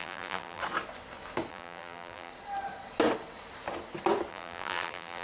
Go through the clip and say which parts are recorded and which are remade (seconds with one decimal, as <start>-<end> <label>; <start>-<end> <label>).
0.0-0.6 remade; 0.6-1.5 recorded; 1.5-2.3 remade; 2.3-4.3 recorded; 4.3-5.2 remade